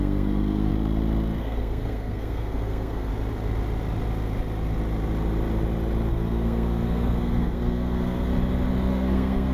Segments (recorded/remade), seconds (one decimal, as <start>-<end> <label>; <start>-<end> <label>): 0.0-0.7 remade; 0.7-1.4 recorded; 1.4-3.1 remade; 3.1-6.1 recorded; 6.1-8.3 remade; 8.3-8.9 recorded; 8.9-9.5 remade